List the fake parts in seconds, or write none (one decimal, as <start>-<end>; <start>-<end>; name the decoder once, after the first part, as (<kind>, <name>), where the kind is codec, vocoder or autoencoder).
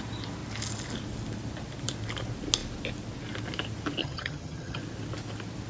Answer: 4.0-4.8 (vocoder, HiFi-GAN)